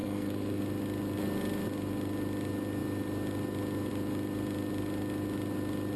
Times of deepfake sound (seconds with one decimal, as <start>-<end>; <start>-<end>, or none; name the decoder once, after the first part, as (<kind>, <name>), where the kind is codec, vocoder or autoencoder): 0.0-0.6 (codec, SNAC)